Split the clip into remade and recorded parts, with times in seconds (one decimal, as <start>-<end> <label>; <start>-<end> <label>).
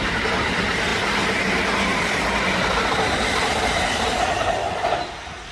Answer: 0.0-5.5 recorded